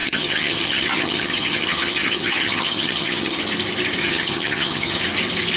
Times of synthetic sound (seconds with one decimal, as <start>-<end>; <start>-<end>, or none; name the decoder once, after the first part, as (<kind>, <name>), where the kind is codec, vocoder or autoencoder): 0.0-3.4 (vocoder, HiFi-GAN); 4.0-5.0